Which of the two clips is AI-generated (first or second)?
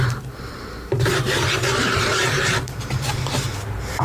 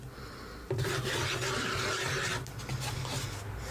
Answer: first